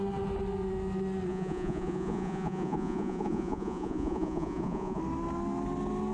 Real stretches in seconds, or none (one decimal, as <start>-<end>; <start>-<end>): 0.0-1.3; 5.0-6.1